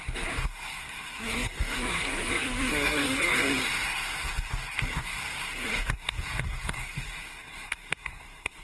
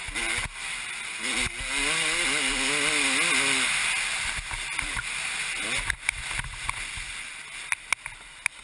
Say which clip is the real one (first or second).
second